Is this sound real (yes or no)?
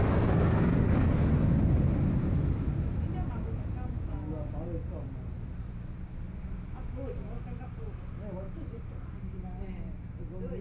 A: yes